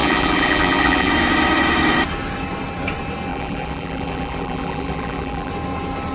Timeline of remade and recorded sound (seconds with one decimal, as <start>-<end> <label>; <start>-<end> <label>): 0.0-1.1 remade; 1.1-3.3 recorded; 3.3-5.5 remade; 5.5-6.1 recorded